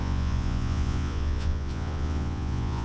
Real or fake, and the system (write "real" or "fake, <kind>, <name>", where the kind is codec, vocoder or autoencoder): fake, vocoder, Vocos